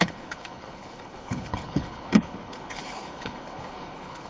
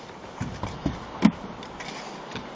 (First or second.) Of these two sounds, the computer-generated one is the first